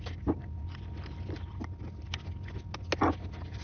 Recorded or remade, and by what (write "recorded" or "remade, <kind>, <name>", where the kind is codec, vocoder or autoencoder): recorded